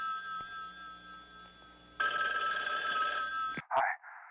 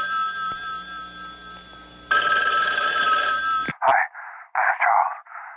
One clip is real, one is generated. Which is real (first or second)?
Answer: first